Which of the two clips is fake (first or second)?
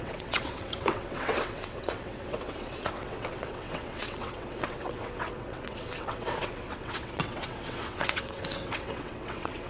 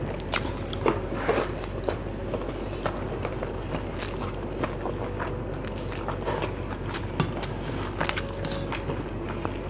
first